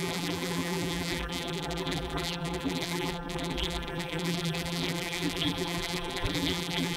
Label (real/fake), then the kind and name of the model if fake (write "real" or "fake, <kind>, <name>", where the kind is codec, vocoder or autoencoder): fake, vocoder, BigVGAN v2